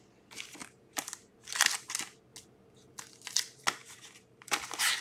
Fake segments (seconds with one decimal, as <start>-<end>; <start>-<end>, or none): 0.6-1.1; 3.8-4.6